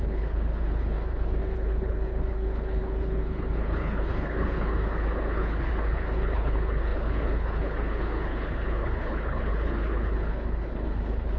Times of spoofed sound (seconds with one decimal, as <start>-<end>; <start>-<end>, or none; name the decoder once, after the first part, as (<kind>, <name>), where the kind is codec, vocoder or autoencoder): 0.0-11.4 (codec, HILCodec)